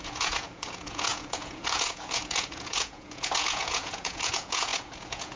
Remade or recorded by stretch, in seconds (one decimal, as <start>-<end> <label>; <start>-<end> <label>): 0.0-5.4 remade